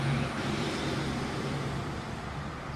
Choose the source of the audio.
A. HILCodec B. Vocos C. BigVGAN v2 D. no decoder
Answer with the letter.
C